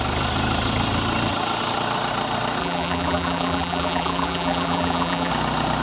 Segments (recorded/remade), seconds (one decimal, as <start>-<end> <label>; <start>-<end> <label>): 0.0-2.6 recorded; 2.6-5.3 remade; 5.3-5.8 recorded